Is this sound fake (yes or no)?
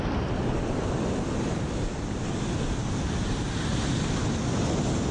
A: no